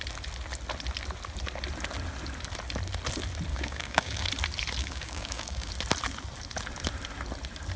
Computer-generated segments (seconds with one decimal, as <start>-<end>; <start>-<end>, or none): 3.5-4.3; 4.8-5.7